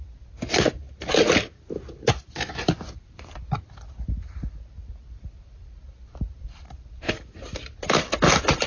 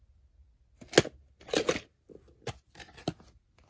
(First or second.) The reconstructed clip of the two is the first